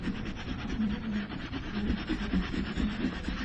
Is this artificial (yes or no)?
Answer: yes